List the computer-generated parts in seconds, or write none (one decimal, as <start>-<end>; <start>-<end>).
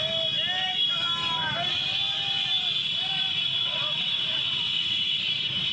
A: 3.5-5.2